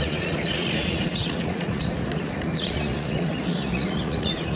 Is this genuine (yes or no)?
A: no